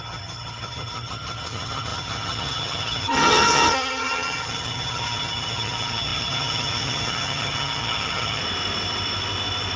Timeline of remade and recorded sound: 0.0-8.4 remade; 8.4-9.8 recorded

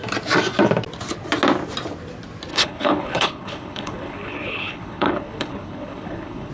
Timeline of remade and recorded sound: 0.0-2.5 recorded; 2.5-6.5 remade

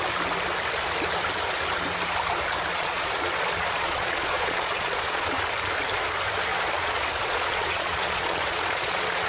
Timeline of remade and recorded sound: 0.0-2.7 recorded; 2.7-5.4 remade; 5.4-6.5 recorded; 6.5-9.3 remade

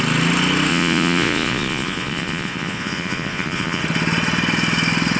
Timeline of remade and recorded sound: 0.0-0.7 recorded; 0.7-3.8 remade; 3.8-5.2 recorded

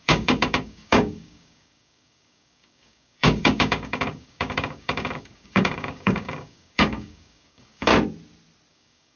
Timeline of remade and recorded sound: 0.0-7.9 remade; 7.9-8.7 recorded; 8.7-9.2 remade

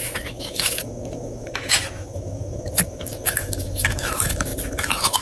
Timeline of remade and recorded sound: 0.0-5.2 remade